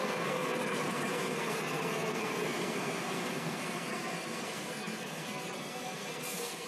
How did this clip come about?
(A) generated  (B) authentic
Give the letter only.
A